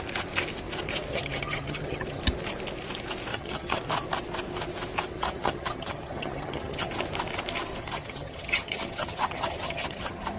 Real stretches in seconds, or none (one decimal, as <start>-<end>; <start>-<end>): 0.0-1.1; 2.2-3.3; 3.8-5.1; 6.9-7.8